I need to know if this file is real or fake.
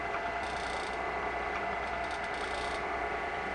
fake